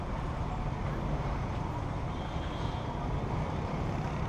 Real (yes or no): yes